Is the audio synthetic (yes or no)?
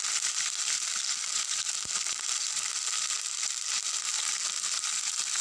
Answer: no